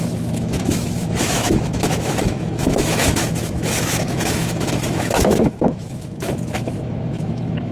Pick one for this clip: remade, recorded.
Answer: remade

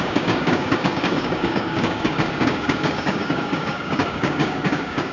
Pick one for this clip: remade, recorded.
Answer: remade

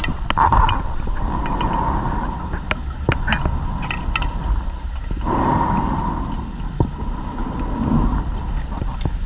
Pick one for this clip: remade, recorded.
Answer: recorded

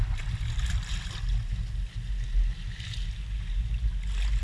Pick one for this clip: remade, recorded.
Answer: recorded